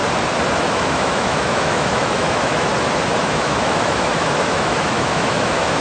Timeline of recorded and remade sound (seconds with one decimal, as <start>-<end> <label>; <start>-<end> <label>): 0.0-0.6 recorded; 0.6-2.7 remade; 2.7-3.2 recorded; 3.2-5.8 remade